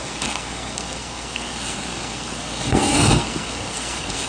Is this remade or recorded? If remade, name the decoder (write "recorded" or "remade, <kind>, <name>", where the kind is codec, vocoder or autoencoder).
remade, codec, SNAC